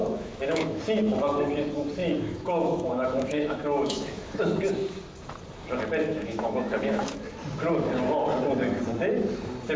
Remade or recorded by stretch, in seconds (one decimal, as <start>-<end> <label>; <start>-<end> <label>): 0.0-0.8 remade; 0.8-2.0 recorded; 2.0-4.5 remade; 4.5-6.1 recorded; 6.1-7.2 remade; 7.2-9.8 recorded